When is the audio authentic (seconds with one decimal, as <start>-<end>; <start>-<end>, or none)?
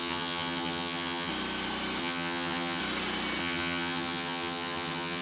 1.3-2.0; 2.8-3.4